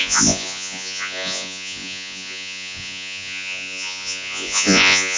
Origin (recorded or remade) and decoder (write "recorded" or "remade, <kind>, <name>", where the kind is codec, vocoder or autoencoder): remade, vocoder, Vocos